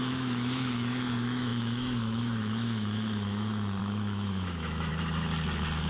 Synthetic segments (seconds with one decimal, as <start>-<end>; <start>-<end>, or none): 0.0-4.9